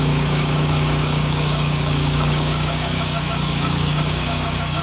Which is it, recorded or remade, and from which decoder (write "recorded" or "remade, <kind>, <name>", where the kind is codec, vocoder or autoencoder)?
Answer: remade, codec, DAC